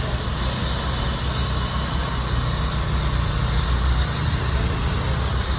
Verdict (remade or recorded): recorded